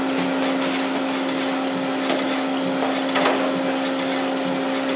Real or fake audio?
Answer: real